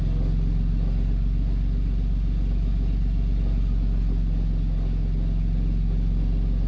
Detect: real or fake real